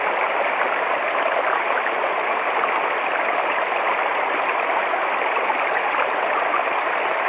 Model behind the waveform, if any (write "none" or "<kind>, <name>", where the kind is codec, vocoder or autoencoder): none